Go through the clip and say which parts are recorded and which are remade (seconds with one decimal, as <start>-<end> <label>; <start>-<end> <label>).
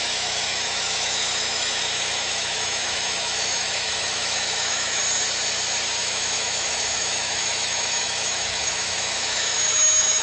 0.0-5.0 remade; 5.0-6.0 recorded; 6.0-10.2 remade